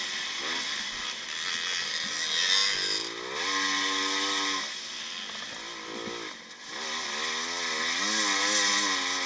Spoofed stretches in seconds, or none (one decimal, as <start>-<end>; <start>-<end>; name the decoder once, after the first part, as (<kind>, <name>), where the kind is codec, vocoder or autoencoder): none